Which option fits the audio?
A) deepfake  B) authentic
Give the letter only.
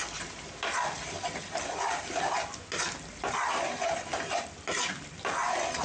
B